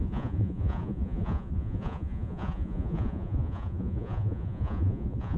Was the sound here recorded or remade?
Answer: remade